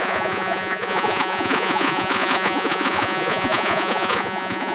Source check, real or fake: fake